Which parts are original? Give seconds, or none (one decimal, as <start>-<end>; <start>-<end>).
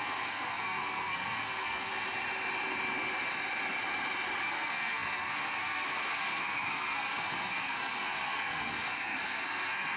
1.9-4.4